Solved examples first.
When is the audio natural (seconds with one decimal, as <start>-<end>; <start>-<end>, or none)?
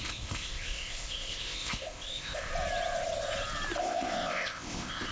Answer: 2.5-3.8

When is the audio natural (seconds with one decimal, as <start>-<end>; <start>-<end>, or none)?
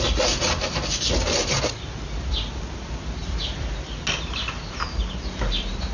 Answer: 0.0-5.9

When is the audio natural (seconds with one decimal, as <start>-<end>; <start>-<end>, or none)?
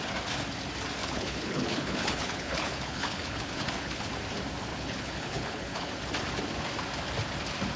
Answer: 0.0-1.0; 4.1-4.7; 5.9-7.8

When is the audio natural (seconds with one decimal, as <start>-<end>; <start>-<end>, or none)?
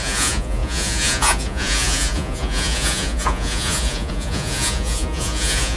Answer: none